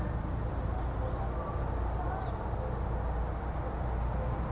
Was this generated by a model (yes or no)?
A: no